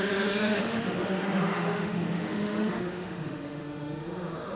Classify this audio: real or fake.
fake